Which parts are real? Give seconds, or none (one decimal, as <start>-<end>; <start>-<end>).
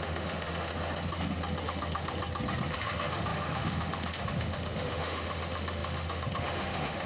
0.7-1.6; 2.2-2.7